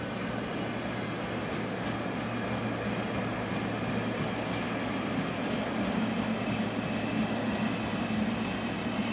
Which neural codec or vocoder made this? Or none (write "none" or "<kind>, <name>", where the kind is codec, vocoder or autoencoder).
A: none